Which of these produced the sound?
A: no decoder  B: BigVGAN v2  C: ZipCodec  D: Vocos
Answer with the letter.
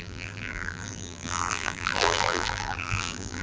B